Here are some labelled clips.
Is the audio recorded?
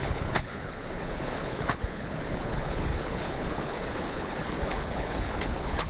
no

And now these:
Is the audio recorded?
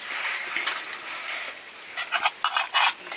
yes